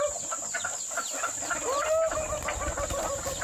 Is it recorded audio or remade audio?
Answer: recorded